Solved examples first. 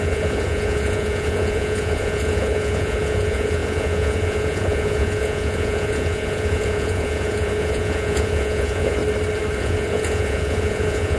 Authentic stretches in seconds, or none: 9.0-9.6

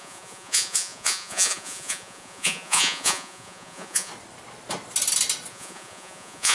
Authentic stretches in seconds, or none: 4.1-5.5

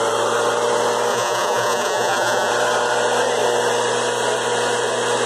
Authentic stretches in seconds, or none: 0.0-1.1; 2.5-5.3